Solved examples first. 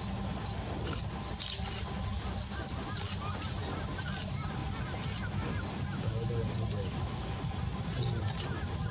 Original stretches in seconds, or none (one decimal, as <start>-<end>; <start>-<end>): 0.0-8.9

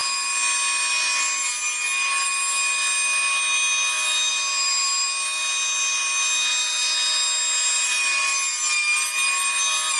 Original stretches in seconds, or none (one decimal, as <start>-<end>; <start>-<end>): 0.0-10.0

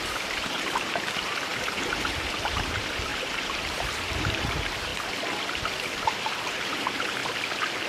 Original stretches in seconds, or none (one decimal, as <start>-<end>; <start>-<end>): 4.9-6.0; 7.2-7.9

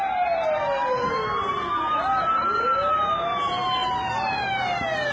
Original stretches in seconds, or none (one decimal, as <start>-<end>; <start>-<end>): 0.0-5.1

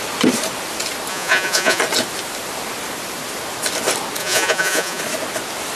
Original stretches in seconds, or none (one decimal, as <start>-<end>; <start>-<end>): 0.0-1.1; 1.8-4.2; 5.0-5.8

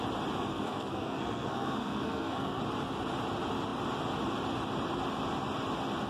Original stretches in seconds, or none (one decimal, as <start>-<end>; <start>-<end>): 0.0-0.5; 2.6-6.1

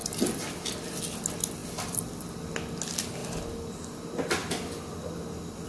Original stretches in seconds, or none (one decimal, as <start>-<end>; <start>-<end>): 1.0-1.6; 2.4-4.4; 5.1-5.7